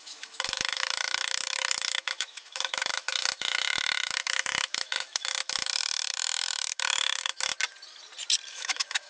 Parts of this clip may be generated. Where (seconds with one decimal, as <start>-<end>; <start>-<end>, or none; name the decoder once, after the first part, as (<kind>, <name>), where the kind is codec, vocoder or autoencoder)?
0.0-7.5 (autoencoder, DAC-VAE); 8.5-9.1